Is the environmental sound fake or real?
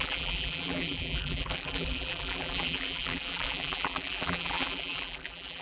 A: fake